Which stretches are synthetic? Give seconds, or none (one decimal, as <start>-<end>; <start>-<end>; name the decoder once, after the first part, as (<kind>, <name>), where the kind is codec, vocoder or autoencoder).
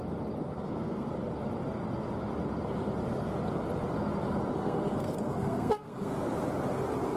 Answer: 0.4-1.1 (codec, SNAC); 4.5-6.4